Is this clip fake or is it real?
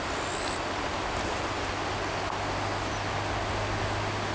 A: real